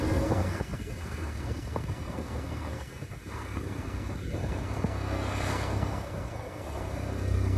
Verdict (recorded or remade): remade